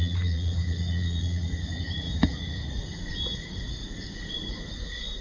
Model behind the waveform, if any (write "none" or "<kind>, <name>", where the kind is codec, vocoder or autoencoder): vocoder, Vocos